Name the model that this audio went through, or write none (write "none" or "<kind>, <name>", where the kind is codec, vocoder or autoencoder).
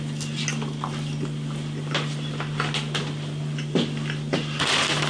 none